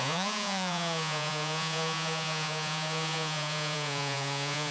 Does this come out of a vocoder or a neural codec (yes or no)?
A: yes